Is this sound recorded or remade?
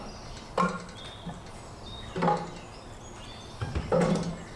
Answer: recorded